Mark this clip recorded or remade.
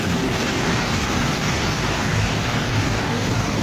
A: remade